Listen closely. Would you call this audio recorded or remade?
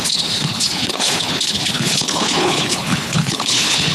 remade